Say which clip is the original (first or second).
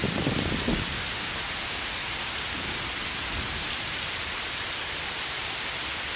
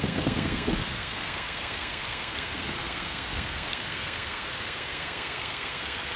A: first